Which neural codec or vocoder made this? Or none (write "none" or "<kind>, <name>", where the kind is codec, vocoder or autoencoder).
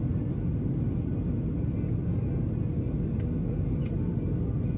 none